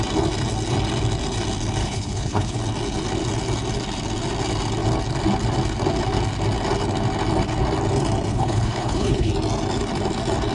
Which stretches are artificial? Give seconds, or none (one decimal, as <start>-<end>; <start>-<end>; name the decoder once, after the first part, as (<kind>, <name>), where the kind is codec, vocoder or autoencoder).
1.8-2.6 (codec, HILCodec); 8.3-9.3